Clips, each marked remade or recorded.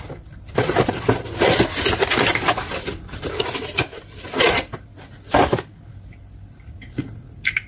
recorded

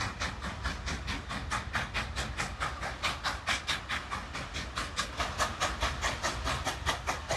recorded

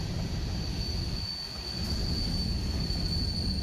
recorded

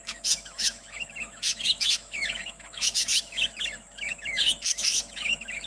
remade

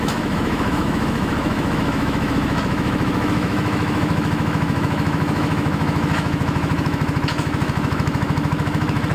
remade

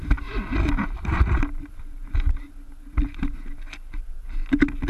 recorded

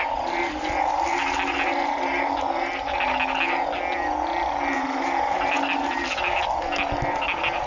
recorded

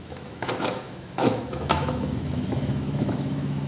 remade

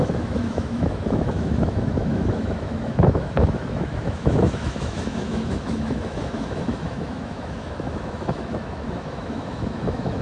remade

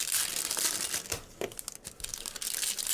recorded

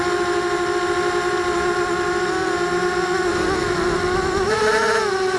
recorded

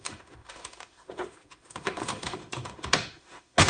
remade